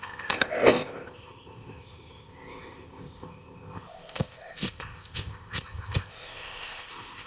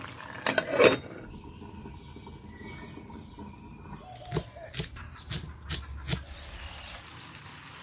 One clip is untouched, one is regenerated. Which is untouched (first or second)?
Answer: second